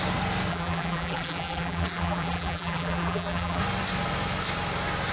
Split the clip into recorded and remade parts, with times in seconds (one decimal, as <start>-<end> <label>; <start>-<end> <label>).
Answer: 0.0-0.5 recorded; 0.5-3.6 remade; 3.6-5.1 recorded